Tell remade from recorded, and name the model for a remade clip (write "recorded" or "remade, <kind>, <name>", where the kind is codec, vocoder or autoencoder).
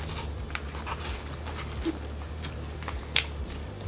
recorded